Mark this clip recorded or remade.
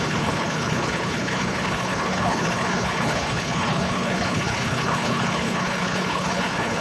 remade